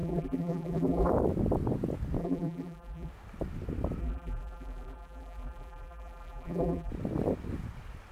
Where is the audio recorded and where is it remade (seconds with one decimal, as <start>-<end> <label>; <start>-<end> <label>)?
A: 0.0-1.1 remade; 1.1-2.2 recorded; 2.2-3.1 remade; 3.1-4.0 recorded; 4.0-6.9 remade; 6.9-8.1 recorded